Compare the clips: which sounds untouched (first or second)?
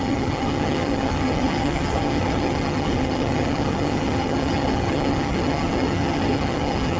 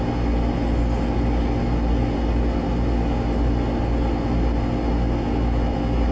second